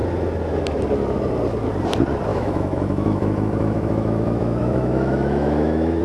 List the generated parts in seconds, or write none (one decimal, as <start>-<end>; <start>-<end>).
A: 2.3-6.0